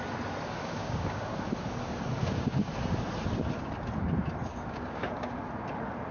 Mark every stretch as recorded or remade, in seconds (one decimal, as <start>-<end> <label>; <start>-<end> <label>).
0.0-0.6 recorded; 0.6-1.2 remade; 1.2-2.2 recorded; 2.2-2.7 remade; 2.7-4.5 recorded; 4.5-5.4 remade; 5.4-6.1 recorded